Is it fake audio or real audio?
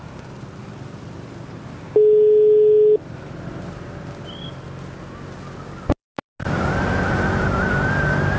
real